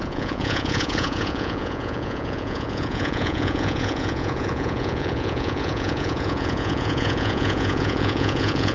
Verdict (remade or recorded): remade